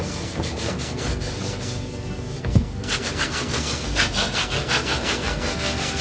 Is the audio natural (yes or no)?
no